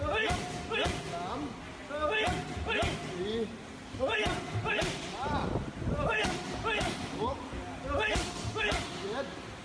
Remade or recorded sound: recorded